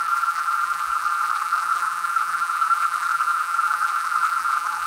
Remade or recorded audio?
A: remade